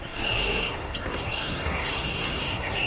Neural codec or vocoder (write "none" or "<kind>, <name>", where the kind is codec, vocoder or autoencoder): codec, SNAC